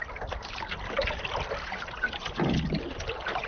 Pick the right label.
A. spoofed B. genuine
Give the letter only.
B